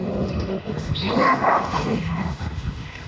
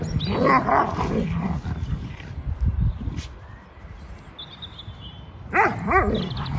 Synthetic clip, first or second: first